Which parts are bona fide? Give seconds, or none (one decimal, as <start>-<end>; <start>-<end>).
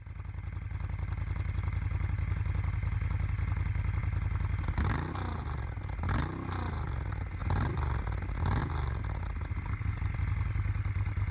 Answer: 0.0-7.4; 8.0-11.3